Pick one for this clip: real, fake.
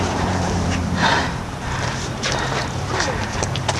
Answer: fake